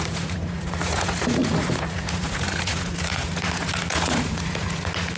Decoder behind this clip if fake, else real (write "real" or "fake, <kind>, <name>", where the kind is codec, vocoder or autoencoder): fake, vocoder, Vocos